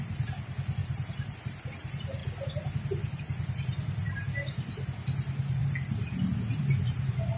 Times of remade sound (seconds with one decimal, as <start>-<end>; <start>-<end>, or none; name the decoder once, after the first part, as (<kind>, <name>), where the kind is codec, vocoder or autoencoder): 0.8-1.4 (vocoder, BigVGAN v2)